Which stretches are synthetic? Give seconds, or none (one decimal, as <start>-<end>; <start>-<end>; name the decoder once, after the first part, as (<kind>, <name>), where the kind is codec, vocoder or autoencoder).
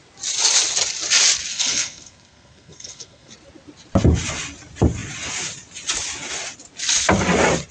1.5-3.3 (codec, SNAC)